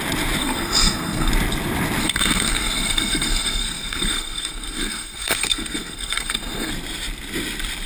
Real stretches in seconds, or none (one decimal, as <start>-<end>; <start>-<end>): 0.0-0.4; 1.3-2.0; 6.7-7.9